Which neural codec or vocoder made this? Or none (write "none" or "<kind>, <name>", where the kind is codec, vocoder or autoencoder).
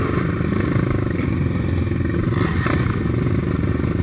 none